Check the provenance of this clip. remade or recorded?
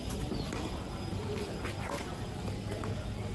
recorded